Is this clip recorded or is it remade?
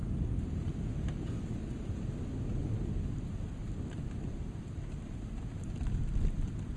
recorded